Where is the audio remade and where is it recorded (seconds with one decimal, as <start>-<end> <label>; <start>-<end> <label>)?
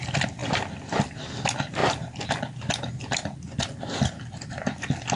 0.0-5.2 recorded